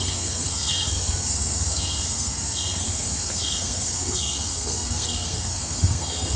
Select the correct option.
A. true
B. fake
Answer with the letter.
B